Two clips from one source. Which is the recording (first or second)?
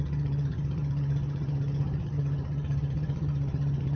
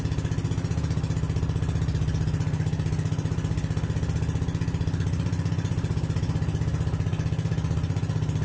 second